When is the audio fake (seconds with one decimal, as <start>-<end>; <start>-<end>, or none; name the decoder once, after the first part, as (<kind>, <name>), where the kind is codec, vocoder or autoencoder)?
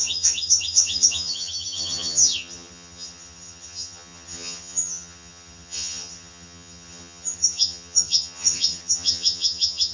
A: 0.0-9.9 (vocoder, HiFi-GAN)